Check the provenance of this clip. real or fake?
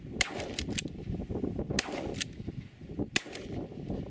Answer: real